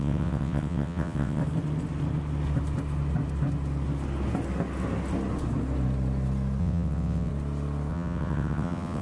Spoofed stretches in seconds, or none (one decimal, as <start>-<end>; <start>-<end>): 0.0-1.4; 6.6-7.3; 7.9-9.0